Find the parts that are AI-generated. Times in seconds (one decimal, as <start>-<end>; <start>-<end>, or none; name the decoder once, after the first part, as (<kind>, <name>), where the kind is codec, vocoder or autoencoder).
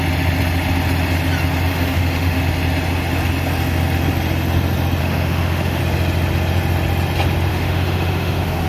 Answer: 1.7-2.4 (autoencoder, DAC-VAE); 5.0-5.8; 7.5-8.7